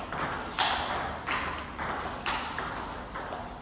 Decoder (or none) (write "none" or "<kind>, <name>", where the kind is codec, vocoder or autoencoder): none